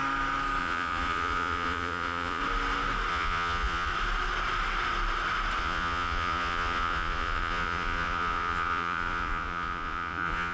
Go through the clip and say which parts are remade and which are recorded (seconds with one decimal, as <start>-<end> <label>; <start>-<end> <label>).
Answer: 0.0-0.6 recorded; 0.6-2.4 remade; 2.4-3.1 recorded; 3.1-3.9 remade; 3.9-5.6 recorded; 5.6-10.5 remade